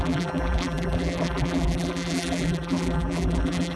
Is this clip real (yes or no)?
no